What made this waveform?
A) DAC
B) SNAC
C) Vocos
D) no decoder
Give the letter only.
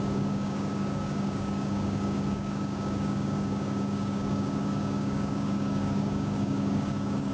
A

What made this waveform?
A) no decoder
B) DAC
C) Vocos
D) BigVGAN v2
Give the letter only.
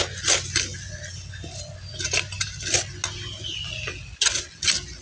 A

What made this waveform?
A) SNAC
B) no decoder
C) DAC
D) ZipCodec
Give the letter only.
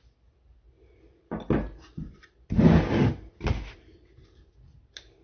B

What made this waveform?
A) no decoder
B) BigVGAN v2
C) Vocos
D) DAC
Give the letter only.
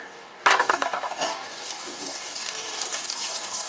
D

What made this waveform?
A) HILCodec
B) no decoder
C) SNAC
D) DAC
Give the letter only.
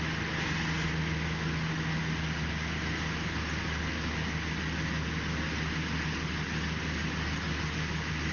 B